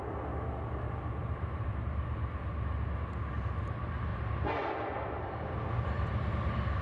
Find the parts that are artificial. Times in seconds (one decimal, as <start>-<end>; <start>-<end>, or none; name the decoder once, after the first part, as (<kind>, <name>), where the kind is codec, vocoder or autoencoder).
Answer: 1.2-2.3 (vocoder, BigVGAN v2); 4.1-5.2